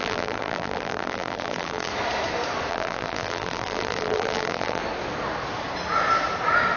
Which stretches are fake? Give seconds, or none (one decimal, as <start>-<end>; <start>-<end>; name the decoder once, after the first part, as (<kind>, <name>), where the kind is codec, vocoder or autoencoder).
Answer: 0.0-1.9 (vocoder, BigVGAN v2); 2.7-4.8